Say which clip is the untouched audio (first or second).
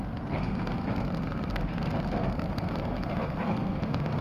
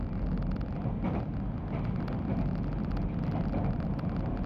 second